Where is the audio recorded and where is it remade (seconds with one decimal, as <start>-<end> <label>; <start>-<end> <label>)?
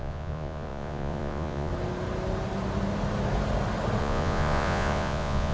0.0-1.7 remade; 1.7-4.0 recorded; 4.0-5.5 remade